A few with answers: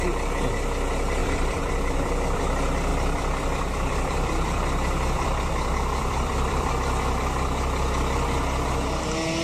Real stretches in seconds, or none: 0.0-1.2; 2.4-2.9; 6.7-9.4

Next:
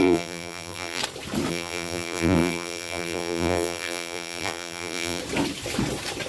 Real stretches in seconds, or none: 1.0-1.5; 5.2-6.3

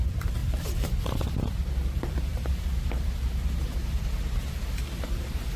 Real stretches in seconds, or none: none

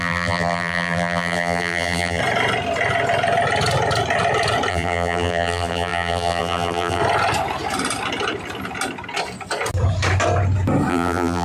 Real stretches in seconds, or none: 2.2-4.7; 7.0-10.9

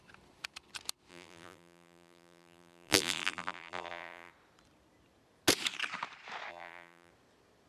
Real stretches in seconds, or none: 0.0-1.1; 4.3-6.5; 7.1-7.7

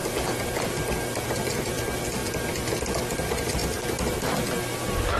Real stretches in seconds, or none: 0.0-3.6; 4.3-5.2